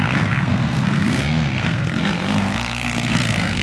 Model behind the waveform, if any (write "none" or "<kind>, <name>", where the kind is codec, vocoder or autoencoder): codec, SNAC